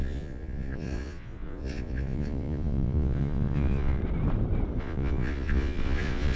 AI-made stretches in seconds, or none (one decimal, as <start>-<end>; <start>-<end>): 0.0-4.0; 4.8-6.4